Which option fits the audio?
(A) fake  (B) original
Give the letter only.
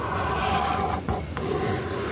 A